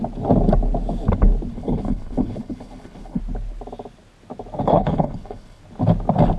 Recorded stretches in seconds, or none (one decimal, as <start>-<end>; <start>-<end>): 0.0-1.5; 3.2-4.7; 5.6-6.4